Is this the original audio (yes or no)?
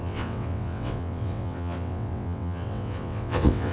no